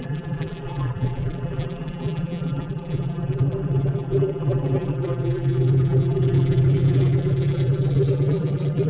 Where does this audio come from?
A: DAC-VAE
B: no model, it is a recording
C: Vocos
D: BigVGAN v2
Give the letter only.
D